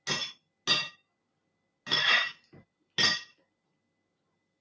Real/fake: real